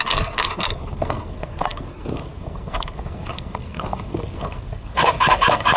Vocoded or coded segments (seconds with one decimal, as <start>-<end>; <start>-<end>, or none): 0.0-5.8